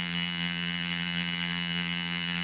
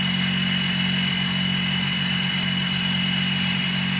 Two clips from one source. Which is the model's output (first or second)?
first